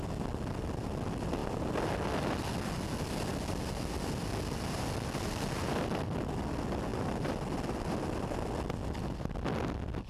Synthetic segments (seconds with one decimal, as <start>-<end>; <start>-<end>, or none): none